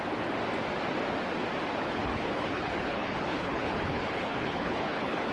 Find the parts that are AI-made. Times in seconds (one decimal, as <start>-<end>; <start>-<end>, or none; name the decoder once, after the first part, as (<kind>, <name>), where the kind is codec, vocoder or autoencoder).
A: 1.8-5.3 (codec, HILCodec)